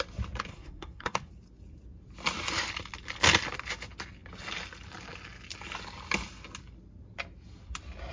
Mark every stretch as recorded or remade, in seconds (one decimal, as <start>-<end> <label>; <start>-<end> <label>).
0.0-0.5 recorded; 0.5-1.3 remade; 1.3-8.1 recorded